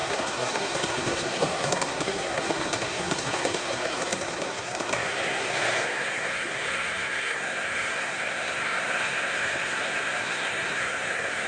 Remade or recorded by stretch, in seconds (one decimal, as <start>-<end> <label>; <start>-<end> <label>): 0.0-11.5 remade